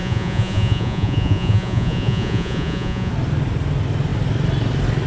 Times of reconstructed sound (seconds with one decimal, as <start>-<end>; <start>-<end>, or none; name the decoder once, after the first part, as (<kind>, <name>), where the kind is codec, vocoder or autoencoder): 0.0-3.1 (vocoder, Vocos)